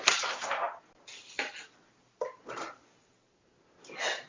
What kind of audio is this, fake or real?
real